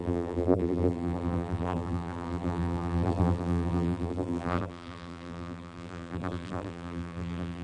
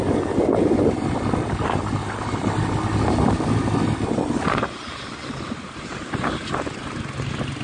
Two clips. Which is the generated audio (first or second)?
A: first